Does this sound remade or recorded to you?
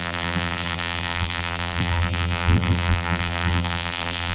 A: remade